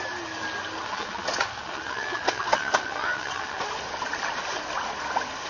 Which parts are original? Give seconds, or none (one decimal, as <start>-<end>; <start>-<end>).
0.0-0.8; 3.6-5.5